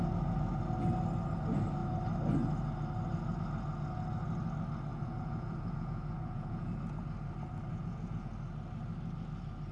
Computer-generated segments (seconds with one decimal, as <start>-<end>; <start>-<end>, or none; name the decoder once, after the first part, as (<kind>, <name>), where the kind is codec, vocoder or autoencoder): 4.9-6.9 (vocoder, Vocos); 7.7-8.3